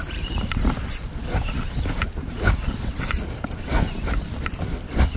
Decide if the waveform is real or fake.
real